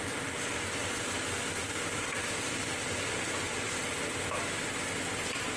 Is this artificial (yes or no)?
no